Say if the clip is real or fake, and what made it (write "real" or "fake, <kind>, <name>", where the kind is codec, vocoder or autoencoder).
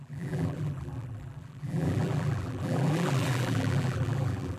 fake, vocoder, BigVGAN v2